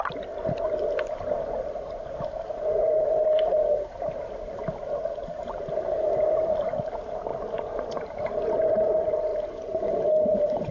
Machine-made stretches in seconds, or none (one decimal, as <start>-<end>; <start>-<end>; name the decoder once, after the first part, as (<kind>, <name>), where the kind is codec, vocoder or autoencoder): 5.2-5.8 (vocoder, BigVGAN v2); 7.3-8.2; 9.3-10.7